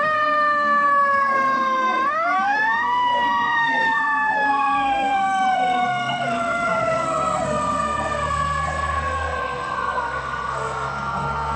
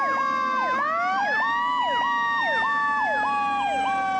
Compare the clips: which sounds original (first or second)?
second